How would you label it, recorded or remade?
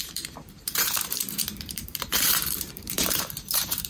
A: remade